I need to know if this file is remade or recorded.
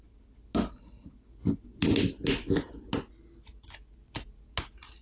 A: recorded